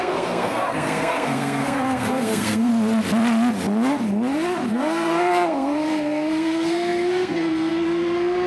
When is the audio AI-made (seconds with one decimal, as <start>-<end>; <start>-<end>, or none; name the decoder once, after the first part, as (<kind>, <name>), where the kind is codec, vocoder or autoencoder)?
0.0-2.7 (codec, SNAC); 4.7-8.5